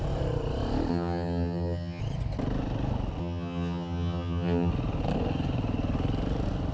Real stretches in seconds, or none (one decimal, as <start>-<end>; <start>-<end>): 0.0-0.9; 2.0-3.2; 4.7-6.7